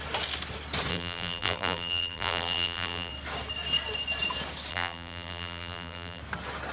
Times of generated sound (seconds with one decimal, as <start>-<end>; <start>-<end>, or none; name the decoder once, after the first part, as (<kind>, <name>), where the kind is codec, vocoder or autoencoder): 0.9-3.1 (vocoder, BigVGAN v2); 4.7-6.2

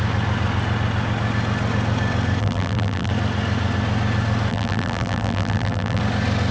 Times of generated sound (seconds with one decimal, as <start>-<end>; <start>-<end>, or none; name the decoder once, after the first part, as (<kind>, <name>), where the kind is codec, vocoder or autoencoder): 2.4-3.1 (vocoder, BigVGAN v2); 4.5-6.0